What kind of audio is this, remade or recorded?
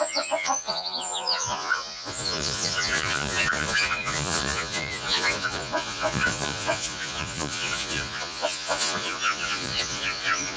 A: remade